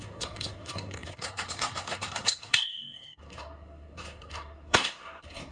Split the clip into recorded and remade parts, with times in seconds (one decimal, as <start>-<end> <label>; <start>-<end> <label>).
0.0-5.5 remade